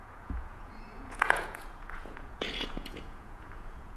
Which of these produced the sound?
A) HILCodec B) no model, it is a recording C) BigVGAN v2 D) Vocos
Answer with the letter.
D